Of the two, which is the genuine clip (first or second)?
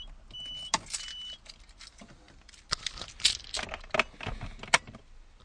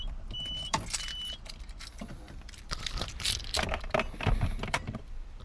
first